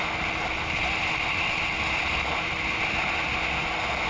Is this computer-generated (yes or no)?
no